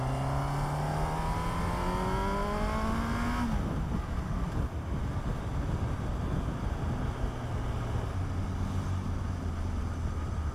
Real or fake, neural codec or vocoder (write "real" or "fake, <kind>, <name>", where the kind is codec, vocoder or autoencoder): real